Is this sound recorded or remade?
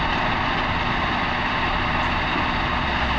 recorded